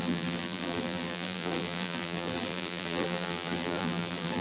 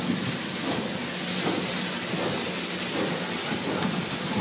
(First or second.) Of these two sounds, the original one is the second